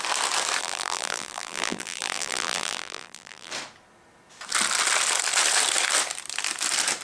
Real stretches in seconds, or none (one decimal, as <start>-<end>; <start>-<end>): 0.0-0.6; 3.5-7.0